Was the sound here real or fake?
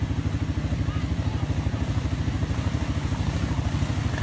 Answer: real